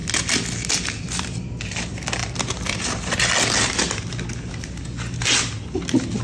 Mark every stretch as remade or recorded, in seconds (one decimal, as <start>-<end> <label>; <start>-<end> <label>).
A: 0.0-6.2 recorded